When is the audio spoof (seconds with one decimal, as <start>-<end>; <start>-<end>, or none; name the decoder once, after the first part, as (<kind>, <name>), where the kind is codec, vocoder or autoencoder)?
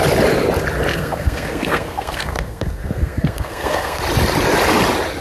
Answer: 0.9-4.0 (codec, SNAC)